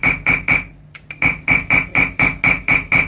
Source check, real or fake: real